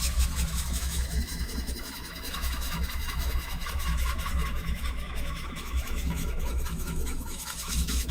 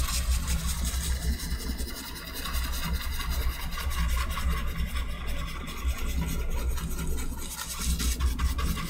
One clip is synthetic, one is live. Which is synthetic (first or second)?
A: first